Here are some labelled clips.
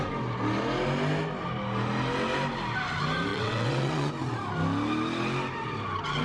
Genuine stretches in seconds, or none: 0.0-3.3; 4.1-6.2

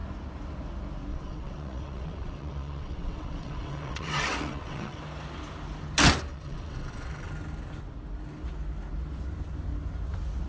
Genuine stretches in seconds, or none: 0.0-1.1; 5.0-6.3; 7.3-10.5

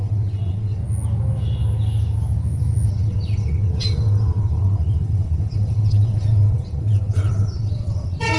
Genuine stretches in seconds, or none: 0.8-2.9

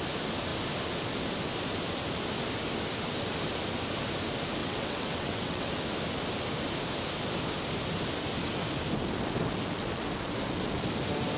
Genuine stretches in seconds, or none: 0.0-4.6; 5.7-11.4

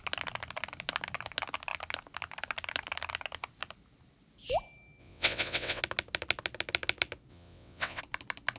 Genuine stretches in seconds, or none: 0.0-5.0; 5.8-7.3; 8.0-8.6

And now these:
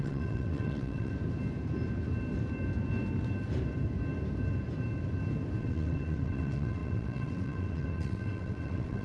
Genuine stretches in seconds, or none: 1.1-5.6